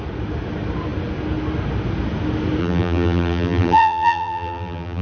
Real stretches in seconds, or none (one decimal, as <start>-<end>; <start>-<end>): 0.0-2.6